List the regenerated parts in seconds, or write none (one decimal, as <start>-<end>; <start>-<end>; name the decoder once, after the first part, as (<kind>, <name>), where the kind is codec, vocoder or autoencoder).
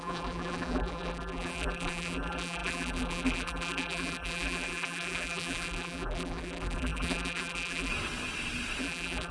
0.0-7.9 (vocoder, BigVGAN v2); 8.8-9.3